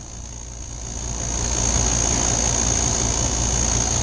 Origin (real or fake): real